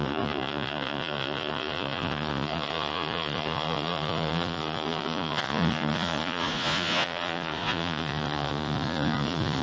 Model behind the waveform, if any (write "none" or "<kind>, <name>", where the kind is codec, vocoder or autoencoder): vocoder, Vocos